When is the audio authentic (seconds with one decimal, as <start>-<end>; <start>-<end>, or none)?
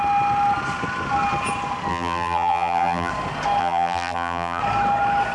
0.0-1.9; 3.1-3.6; 4.6-5.3